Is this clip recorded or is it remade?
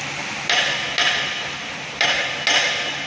recorded